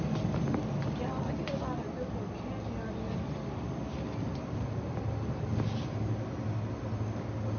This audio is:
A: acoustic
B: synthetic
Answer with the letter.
A